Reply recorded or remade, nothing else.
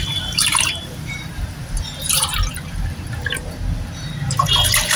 remade